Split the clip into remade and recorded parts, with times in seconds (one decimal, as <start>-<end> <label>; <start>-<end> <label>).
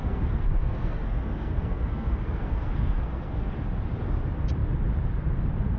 0.0-3.5 remade; 3.5-5.8 recorded